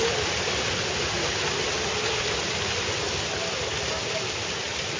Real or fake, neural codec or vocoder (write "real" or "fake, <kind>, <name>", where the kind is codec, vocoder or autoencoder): real